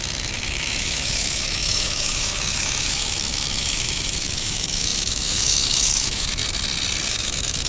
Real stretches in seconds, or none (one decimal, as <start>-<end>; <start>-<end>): 6.4-7.1